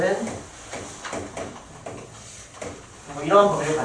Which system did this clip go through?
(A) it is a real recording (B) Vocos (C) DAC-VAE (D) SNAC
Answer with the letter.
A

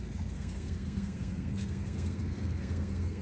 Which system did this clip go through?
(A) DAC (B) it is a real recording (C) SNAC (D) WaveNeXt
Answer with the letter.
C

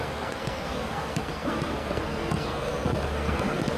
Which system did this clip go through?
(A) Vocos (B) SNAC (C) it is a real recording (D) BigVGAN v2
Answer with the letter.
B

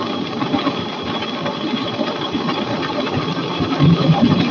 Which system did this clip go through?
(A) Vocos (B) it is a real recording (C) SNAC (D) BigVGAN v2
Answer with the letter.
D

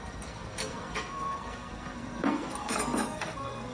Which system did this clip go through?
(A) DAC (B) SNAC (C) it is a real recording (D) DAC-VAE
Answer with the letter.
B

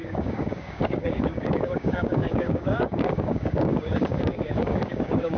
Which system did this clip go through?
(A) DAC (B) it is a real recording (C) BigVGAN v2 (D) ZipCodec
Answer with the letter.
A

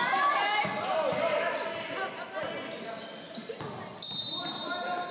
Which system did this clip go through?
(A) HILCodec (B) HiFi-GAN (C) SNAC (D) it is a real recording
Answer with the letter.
D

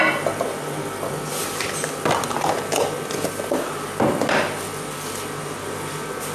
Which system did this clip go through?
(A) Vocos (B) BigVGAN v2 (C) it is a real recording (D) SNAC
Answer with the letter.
C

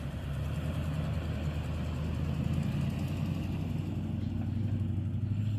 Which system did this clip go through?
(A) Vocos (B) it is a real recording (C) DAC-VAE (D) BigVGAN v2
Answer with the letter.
B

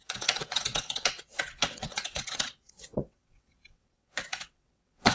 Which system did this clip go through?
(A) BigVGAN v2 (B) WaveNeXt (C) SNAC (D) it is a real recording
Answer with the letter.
B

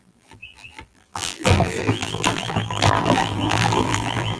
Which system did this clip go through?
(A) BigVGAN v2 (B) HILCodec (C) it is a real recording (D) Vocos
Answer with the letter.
A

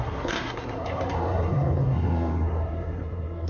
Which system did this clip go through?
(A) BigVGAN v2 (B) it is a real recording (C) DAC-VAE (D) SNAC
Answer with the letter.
D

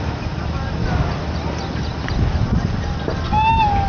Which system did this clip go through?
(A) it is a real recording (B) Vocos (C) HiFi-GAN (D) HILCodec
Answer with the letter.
A